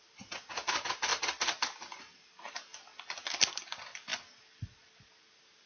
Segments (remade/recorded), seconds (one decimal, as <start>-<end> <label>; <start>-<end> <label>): 0.0-1.1 remade; 1.1-2.0 recorded; 2.0-2.7 remade; 2.7-3.4 recorded; 3.4-4.1 remade; 4.1-5.0 recorded; 5.0-5.7 remade